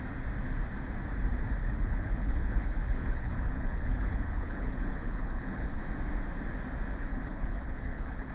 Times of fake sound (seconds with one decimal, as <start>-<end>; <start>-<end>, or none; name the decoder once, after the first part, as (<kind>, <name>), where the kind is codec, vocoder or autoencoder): 1.6-5.8 (codec, HILCodec); 7.1-8.3

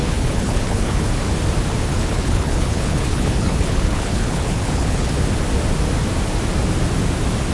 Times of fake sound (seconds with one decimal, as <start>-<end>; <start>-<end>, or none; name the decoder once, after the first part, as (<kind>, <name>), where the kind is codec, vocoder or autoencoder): 0.0-1.1 (codec, HILCodec); 1.9-5.1

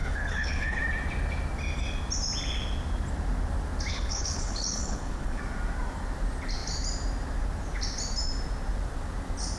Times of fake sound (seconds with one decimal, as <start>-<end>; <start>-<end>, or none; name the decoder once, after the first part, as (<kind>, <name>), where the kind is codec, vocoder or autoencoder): 0.0-0.8 (codec, HILCodec); 3.9-5.4